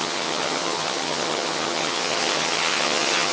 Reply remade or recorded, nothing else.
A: remade